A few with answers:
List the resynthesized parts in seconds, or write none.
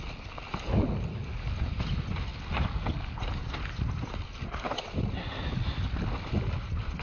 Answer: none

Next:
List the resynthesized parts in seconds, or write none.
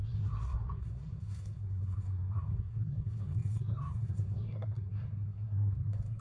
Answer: 0.0-6.2 (codec, SNAC)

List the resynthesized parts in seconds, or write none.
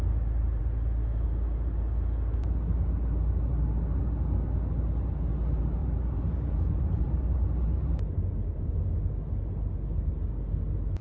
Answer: 5.8-8.7 (vocoder, BigVGAN v2)